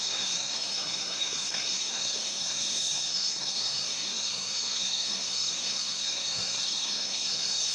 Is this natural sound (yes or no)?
no